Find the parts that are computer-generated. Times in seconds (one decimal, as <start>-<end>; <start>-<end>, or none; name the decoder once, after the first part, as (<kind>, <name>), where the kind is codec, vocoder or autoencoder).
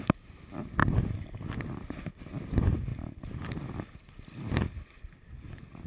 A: none